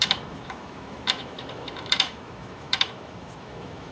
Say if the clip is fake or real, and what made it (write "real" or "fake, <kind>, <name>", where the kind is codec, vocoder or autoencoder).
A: fake, autoencoder, DAC-VAE